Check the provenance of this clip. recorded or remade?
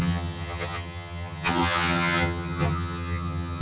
remade